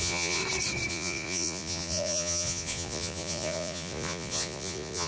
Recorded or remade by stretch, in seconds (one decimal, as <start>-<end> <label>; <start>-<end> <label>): 0.0-0.4 remade; 0.4-0.9 recorded; 0.9-5.1 remade

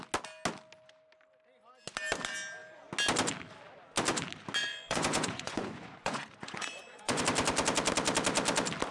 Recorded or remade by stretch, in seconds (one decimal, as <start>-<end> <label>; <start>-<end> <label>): 0.0-4.6 recorded; 4.6-7.2 remade; 7.2-8.9 recorded

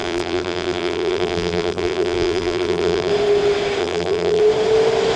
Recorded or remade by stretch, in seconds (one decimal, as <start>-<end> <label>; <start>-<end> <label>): 0.0-3.1 remade; 3.1-3.8 recorded; 3.8-4.4 remade; 4.4-5.2 recorded